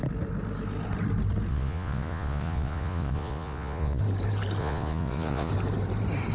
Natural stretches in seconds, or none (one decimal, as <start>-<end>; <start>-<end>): 0.0-1.5; 4.0-4.6; 5.5-6.3